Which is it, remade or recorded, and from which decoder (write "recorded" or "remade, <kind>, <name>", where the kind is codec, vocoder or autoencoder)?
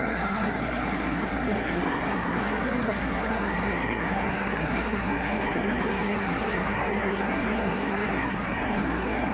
remade, codec, SNAC